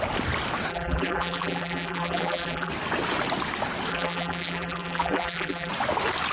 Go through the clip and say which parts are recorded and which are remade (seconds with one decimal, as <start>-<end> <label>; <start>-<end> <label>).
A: 0.0-0.7 recorded; 0.7-2.7 remade; 2.7-3.9 recorded; 3.9-5.7 remade; 5.7-6.3 recorded